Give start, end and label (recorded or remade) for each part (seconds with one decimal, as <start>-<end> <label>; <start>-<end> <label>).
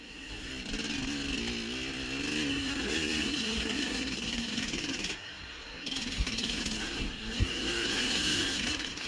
0.0-0.5 remade; 0.5-2.5 recorded; 2.5-9.1 remade